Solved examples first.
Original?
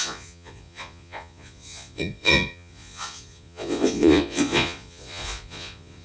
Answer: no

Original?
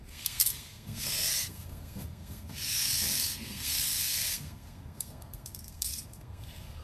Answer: no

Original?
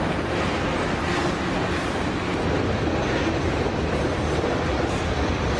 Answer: yes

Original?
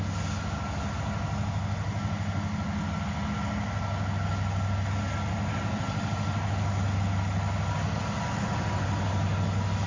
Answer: yes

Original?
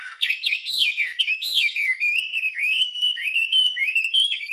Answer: no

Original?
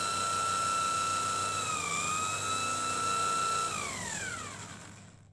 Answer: yes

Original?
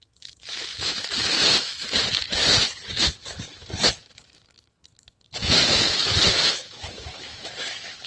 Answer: no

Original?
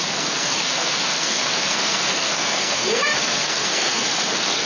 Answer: no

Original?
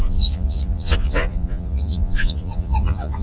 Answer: no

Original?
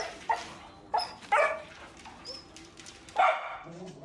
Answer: yes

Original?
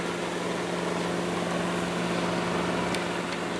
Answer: yes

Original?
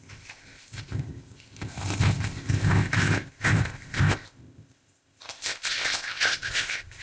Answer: no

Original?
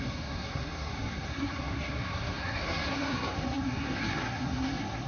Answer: no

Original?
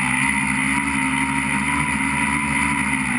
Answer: yes